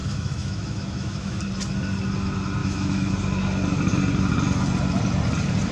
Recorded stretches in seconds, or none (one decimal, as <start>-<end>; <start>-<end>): 1.4-2.6; 3.1-5.7